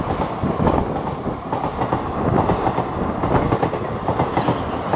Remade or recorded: recorded